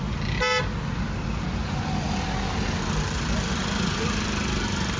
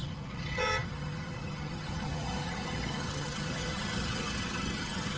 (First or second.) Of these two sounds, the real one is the first